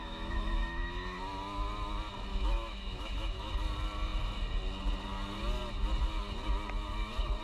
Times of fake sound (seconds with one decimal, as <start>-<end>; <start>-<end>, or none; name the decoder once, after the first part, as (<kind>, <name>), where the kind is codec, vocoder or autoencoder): 0.0-1.2 (autoencoder, DAC-VAE); 2.3-3.5